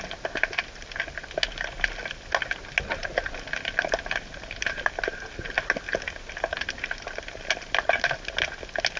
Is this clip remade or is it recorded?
recorded